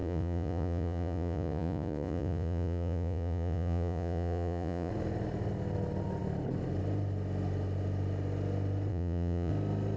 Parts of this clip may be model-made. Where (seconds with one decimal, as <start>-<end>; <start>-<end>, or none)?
0.0-4.9; 8.9-9.5